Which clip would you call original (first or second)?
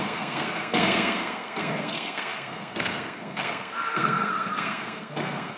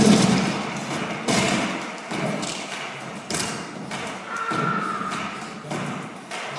second